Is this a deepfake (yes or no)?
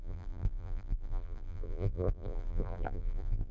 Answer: yes